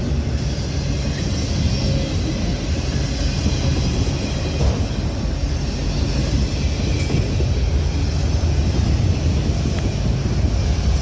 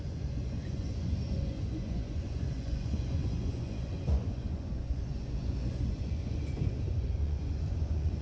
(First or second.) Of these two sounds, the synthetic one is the second